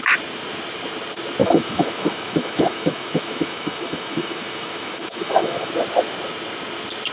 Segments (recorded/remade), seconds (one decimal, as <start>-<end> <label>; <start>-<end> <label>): 0.0-1.4 recorded; 1.4-5.7 remade; 5.7-7.1 recorded